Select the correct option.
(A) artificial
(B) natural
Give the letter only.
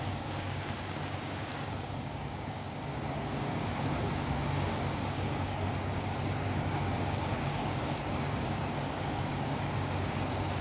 A